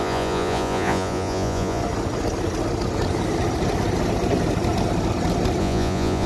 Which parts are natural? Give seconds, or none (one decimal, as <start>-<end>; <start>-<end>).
1.8-5.6